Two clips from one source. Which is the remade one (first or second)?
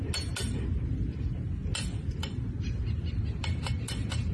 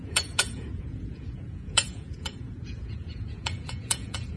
second